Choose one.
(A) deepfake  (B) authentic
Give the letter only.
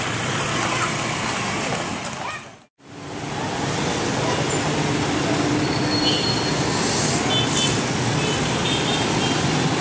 B